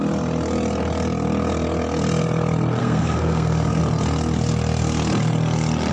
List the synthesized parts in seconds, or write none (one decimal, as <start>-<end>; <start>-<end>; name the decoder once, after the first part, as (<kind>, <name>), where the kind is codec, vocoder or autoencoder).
2.8-3.8 (codec, SNAC)